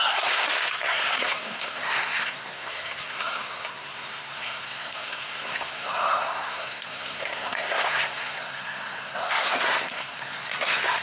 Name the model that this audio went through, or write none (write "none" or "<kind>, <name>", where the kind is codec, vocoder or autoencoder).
codec, SNAC